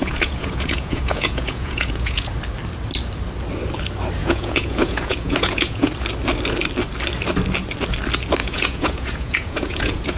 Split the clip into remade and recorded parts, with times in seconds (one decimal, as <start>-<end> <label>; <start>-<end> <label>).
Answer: 0.0-2.3 remade; 2.3-4.2 recorded; 4.2-5.9 remade; 5.9-8.4 recorded; 8.4-10.2 remade